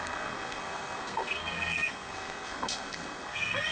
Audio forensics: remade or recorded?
remade